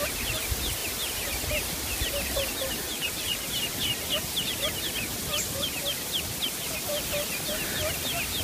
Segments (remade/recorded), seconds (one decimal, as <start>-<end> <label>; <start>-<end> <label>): 0.0-8.4 recorded